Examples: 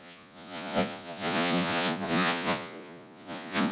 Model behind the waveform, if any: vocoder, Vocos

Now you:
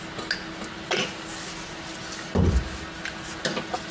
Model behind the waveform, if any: none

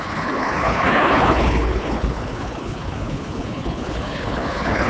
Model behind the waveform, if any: codec, HILCodec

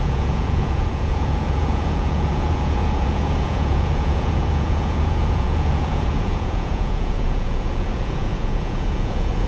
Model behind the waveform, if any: vocoder, Vocos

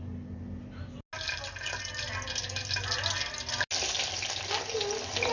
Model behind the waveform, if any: none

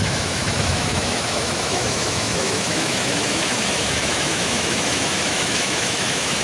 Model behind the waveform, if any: autoencoder, DAC-VAE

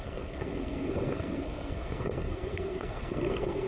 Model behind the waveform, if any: codec, SNAC